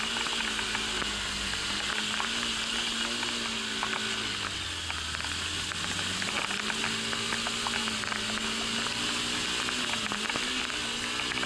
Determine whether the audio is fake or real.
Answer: real